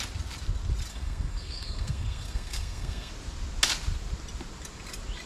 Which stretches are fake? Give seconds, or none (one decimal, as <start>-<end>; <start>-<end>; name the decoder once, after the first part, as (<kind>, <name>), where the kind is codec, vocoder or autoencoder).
0.9-3.1 (codec, SNAC)